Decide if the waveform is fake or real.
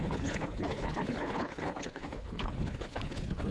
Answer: fake